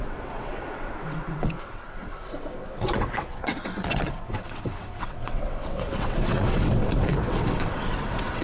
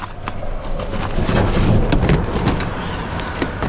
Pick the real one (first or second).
second